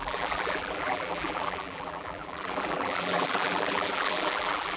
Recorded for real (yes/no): no